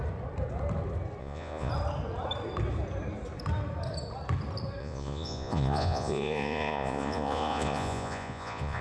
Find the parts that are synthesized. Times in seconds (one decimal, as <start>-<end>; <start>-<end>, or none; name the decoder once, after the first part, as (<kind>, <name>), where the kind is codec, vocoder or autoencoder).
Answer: 1.2-1.7 (vocoder, Vocos); 4.8-8.8